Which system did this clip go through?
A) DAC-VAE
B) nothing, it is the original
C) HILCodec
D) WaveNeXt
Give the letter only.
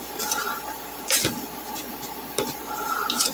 B